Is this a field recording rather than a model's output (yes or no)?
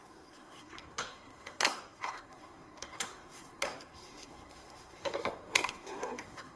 no